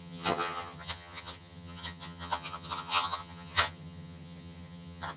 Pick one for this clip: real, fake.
fake